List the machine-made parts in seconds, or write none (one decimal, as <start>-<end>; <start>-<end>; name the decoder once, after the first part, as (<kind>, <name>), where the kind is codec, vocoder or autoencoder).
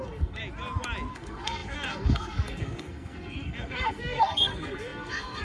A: 0.0-0.4 (codec, SNAC); 1.1-5.4